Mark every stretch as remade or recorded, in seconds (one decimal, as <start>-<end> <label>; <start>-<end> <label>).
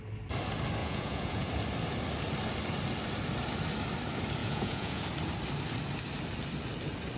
0.0-0.8 recorded; 0.8-1.5 remade; 1.5-4.4 recorded; 4.4-5.0 remade; 5.0-7.2 recorded